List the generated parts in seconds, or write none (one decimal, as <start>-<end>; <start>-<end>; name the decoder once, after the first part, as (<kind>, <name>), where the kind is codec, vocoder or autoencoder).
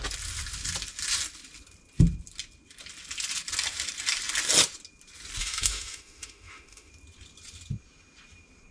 5.4-6.9 (autoencoder, DAC-VAE)